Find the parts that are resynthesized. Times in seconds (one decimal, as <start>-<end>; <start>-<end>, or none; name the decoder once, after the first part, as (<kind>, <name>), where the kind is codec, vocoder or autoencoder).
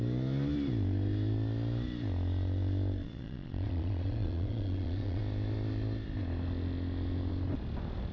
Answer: 3.0-5.2 (vocoder, Vocos)